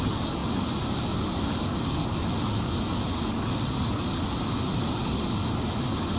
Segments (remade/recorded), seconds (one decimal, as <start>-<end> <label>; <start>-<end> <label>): 0.0-0.4 remade; 0.4-2.7 recorded; 2.7-6.2 remade

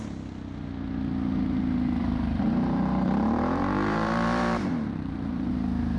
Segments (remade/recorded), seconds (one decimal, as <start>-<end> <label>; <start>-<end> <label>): 0.0-2.0 recorded; 2.0-5.5 remade; 5.5-6.0 recorded

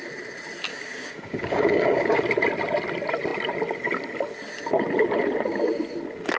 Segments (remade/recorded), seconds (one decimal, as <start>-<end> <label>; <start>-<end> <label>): 0.0-0.7 recorded; 0.7-2.2 remade; 2.2-6.4 recorded

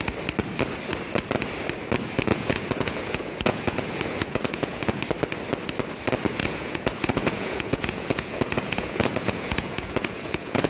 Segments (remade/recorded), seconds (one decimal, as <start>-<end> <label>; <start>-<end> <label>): 0.0-2.3 recorded; 2.3-5.0 remade; 5.0-6.4 recorded; 6.4-10.7 remade

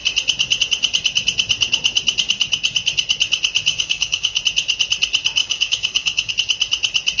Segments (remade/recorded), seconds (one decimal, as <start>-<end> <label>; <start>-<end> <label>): 0.0-3.7 recorded; 3.7-4.4 remade; 4.4-5.4 recorded; 5.4-6.3 remade; 6.3-7.2 recorded